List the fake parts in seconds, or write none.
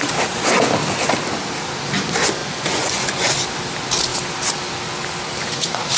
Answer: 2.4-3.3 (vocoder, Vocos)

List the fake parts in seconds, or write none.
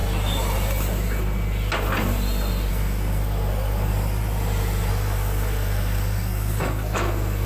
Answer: 2.7-3.9 (codec, SNAC); 4.9-7.5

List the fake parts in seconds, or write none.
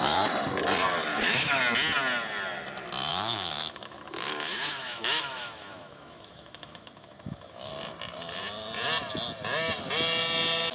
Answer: 1.1-1.6 (autoencoder, DAC-VAE); 3.1-7.7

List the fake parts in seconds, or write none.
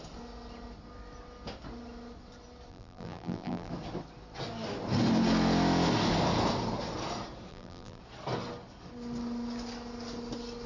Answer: 2.7-3.7 (vocoder, BigVGAN v2); 7.5-8.0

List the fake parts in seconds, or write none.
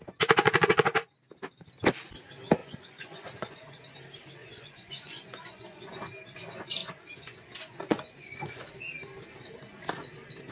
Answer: 0.4-0.9 (vocoder, Vocos); 2.6-3.9; 4.4-5.9; 6.8-8.7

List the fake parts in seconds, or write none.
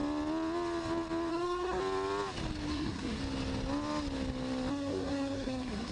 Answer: 1.3-1.8 (codec, SNAC); 2.7-3.2; 4.7-5.9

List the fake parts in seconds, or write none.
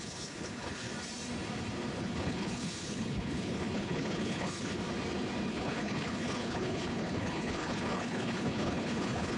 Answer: 0.0-0.9 (codec, HILCodec); 2.0-4.8; 5.5-9.4